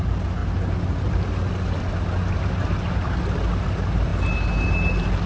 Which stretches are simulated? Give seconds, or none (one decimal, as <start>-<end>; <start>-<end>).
none